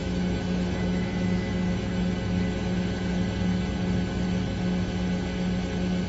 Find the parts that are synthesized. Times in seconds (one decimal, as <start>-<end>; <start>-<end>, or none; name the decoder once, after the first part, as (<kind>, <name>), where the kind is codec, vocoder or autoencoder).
0.0-1.9 (autoencoder, DAC-VAE)